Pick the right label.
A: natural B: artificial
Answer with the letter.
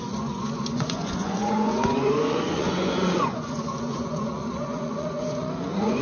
B